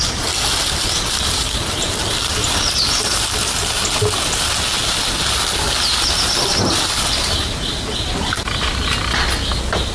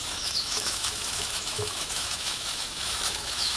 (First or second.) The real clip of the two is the first